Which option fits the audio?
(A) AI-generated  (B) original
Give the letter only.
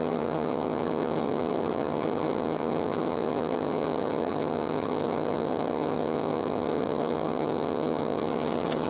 A